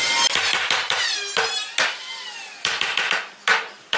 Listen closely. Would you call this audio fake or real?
real